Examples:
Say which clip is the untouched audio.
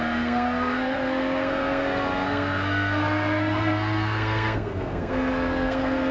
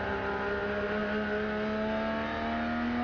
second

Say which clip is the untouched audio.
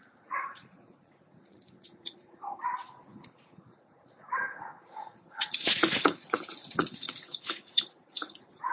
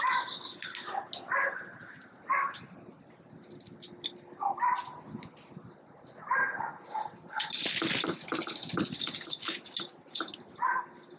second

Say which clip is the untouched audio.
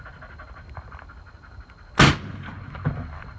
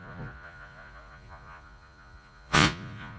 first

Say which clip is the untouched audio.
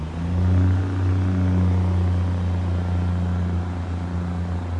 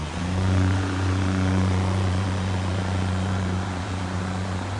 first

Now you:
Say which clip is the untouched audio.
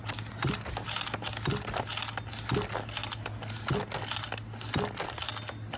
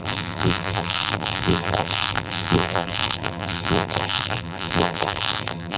first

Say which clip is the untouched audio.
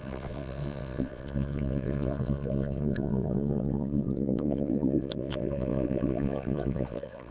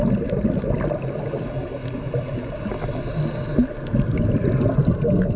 second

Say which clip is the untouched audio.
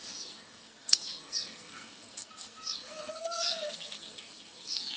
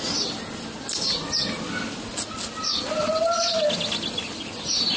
second